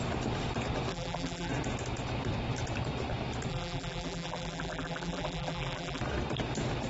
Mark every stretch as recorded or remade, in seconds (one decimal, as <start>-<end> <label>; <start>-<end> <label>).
0.0-0.9 recorded; 0.9-1.5 remade; 1.5-3.5 recorded; 3.5-6.0 remade; 6.0-6.9 recorded